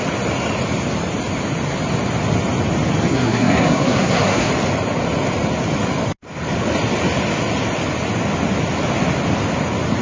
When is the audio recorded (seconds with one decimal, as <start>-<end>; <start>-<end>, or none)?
0.0-3.1; 4.5-10.0